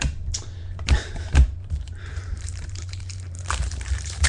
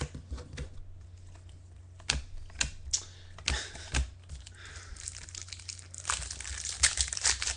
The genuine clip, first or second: second